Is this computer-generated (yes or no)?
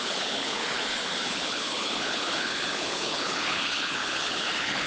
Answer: yes